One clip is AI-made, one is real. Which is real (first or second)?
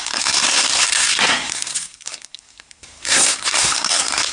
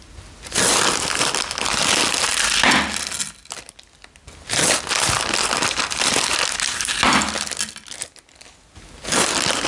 second